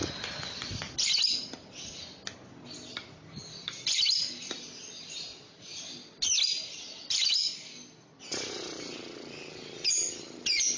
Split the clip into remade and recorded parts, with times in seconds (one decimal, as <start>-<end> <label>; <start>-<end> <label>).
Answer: 0.0-10.8 recorded